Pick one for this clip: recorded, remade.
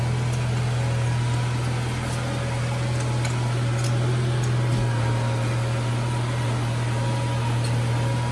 recorded